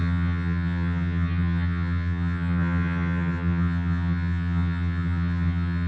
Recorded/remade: remade